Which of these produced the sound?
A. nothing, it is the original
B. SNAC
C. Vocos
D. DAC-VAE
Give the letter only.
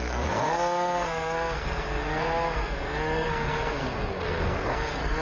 B